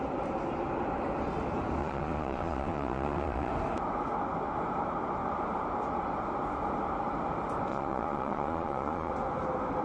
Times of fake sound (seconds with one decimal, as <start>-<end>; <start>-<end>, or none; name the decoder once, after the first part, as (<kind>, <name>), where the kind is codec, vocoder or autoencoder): 1.8-3.5 (vocoder, Vocos); 7.7-9.1